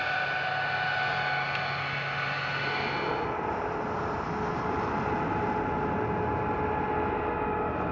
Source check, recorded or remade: recorded